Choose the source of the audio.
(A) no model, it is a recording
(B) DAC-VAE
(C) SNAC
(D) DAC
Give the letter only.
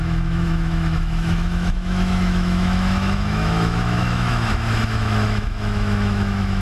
B